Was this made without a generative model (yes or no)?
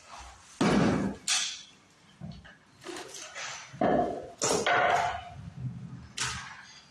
yes